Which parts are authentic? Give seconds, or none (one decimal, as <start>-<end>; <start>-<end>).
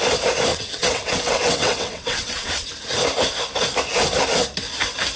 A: 0.0-0.5; 2.7-5.2